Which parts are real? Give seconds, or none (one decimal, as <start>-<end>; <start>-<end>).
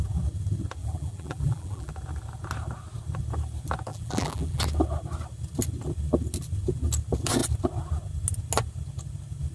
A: 0.0-0.8; 1.9-3.9; 4.6-9.5